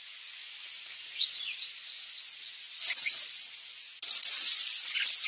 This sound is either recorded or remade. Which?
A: recorded